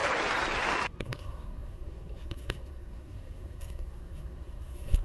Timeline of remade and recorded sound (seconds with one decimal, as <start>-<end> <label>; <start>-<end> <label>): 0.0-1.0 recorded; 1.0-5.0 remade